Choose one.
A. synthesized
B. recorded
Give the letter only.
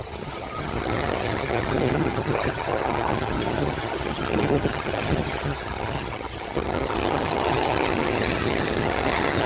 A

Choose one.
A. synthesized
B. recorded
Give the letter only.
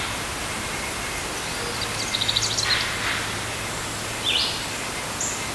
B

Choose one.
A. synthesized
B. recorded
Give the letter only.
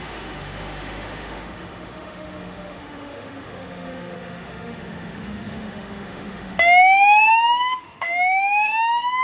A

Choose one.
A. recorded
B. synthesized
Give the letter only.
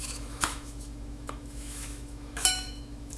B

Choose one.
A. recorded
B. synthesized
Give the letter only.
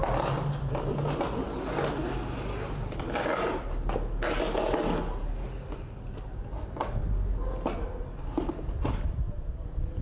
A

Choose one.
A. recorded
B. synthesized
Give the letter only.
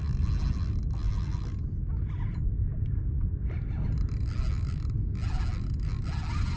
A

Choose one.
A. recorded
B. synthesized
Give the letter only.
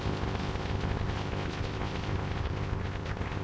B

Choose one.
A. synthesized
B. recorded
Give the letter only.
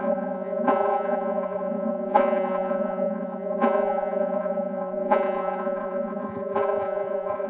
A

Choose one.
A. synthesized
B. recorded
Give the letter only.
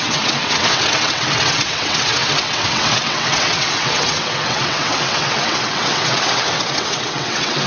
A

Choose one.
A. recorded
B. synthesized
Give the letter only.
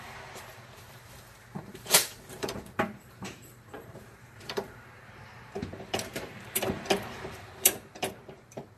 B